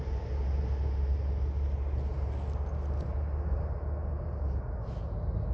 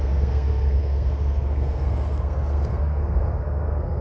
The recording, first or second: first